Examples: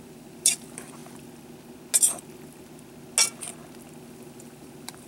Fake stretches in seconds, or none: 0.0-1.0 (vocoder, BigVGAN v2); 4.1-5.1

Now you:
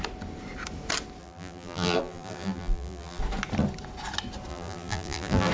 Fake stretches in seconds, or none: 1.2-3.2 (vocoder, BigVGAN v2); 4.5-5.5

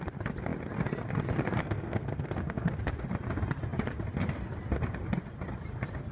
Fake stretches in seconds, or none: 1.6-2.7 (codec, SNAC)

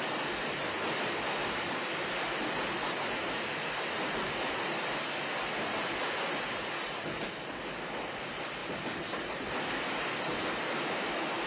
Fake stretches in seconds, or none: none

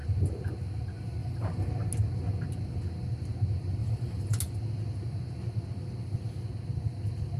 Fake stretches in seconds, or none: 1.2-1.7 (vocoder, BigVGAN v2); 3.8-4.4